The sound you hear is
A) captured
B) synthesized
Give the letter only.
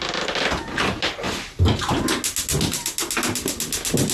A